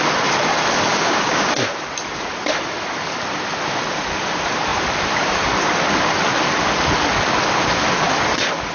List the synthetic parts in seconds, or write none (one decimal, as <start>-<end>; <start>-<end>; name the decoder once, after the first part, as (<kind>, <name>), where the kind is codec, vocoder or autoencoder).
0.9-1.5 (codec, DAC)